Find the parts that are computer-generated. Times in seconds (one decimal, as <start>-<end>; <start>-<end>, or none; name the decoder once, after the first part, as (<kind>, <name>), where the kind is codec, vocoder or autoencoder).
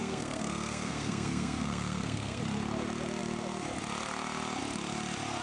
0.0-2.4 (codec, SNAC)